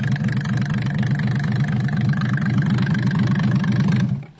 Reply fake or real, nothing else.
real